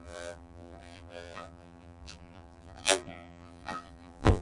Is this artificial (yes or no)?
yes